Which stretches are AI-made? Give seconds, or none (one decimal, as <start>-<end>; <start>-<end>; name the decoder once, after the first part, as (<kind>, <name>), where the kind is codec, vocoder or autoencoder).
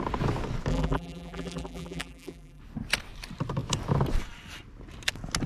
0.7-2.6 (vocoder, BigVGAN v2)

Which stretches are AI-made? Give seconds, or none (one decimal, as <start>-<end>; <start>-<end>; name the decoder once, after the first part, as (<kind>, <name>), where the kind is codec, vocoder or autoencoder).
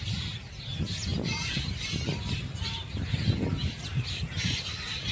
none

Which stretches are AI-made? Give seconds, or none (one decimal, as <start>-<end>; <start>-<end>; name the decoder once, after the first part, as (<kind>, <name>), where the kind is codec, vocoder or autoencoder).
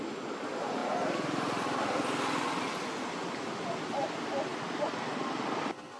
none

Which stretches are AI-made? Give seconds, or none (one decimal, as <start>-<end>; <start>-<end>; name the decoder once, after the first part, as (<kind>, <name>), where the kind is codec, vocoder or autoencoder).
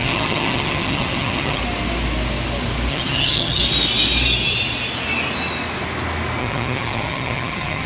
0.0-1.6 (vocoder, HiFi-GAN); 2.9-3.6; 6.4-7.9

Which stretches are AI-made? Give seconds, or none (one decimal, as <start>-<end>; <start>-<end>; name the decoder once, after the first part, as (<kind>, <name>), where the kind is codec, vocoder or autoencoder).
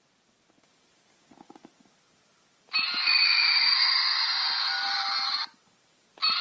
none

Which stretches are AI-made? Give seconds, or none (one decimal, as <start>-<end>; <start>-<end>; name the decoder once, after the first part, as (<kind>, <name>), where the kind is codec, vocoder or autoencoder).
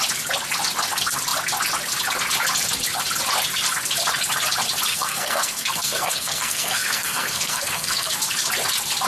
4.9-8.2 (codec, SNAC)